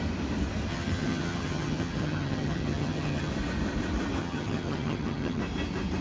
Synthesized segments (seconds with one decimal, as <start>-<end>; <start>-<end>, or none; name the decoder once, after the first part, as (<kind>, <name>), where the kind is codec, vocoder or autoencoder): 0.7-3.3 (vocoder, HiFi-GAN); 4.2-5.4